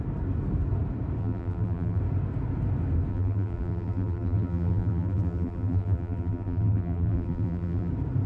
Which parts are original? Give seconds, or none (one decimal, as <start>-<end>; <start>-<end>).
0.0-1.2; 2.0-3.1; 7.9-8.3

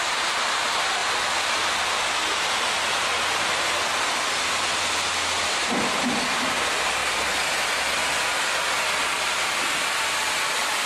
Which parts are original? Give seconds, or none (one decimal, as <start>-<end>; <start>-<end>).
1.0-5.5; 7.0-7.6; 8.0-10.2

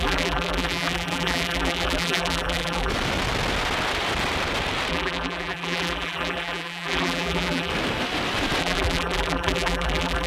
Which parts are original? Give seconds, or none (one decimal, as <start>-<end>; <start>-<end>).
2.9-4.9; 7.7-8.6

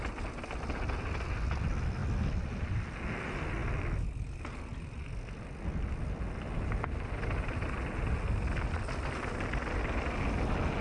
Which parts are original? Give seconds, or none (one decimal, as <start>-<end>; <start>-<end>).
0.0-10.8

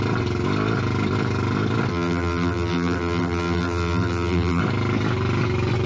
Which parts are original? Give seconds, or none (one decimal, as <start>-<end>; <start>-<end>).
0.0-1.9; 4.6-5.9

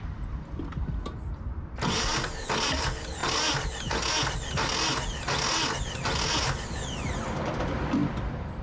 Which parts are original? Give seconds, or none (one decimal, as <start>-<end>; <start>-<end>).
3.2-7.6

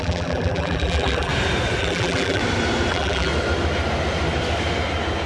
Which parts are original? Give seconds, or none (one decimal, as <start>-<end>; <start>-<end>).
1.3-1.8; 2.4-2.9; 3.3-5.3